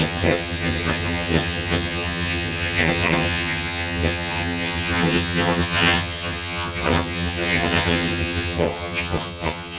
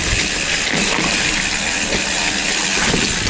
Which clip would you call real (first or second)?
second